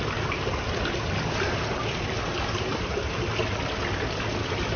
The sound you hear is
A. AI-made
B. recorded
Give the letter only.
B